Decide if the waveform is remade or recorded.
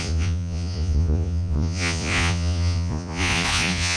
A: remade